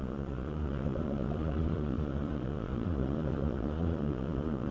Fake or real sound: fake